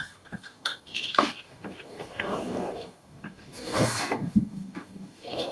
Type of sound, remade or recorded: remade